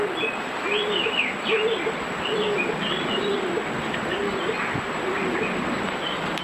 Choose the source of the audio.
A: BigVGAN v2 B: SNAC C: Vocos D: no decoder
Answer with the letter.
A